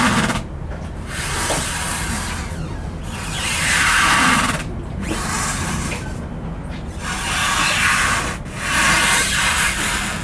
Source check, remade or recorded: recorded